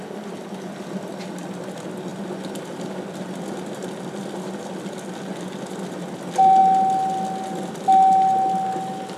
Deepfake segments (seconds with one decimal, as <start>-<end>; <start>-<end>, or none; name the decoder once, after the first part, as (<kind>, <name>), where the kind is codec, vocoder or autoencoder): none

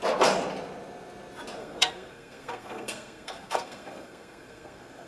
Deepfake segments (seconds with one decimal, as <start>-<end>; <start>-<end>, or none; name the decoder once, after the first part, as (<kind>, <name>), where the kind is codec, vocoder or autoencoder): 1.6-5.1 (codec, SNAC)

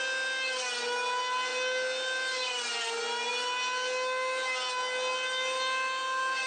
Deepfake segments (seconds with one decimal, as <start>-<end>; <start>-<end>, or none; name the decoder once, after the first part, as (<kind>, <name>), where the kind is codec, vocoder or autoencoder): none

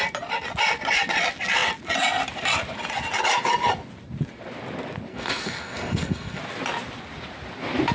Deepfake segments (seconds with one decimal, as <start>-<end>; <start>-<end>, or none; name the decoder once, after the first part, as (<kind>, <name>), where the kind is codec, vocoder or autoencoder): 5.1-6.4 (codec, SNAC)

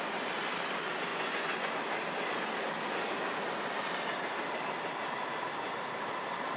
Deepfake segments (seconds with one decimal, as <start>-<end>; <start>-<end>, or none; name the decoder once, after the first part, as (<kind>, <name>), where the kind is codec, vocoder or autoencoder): 1.1-1.7 (vocoder, Vocos)

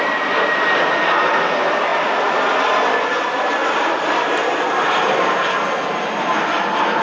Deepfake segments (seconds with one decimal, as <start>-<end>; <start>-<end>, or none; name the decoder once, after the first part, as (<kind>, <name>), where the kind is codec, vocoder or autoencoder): none